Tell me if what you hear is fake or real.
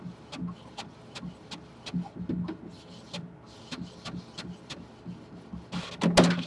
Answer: real